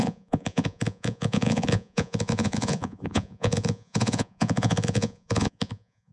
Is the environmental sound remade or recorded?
remade